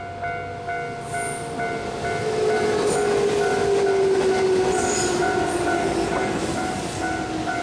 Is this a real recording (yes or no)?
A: yes